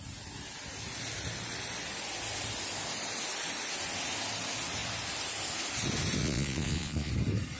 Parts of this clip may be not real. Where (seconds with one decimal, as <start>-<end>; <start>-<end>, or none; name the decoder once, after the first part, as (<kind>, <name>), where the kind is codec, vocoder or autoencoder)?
6.2-7.1 (vocoder, Vocos)